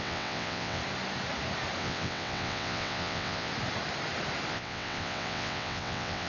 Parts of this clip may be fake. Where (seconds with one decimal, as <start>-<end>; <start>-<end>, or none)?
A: 0.0-0.8; 1.8-3.5; 4.5-6.3